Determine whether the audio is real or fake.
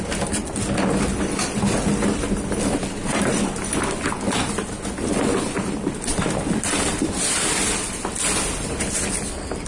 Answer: real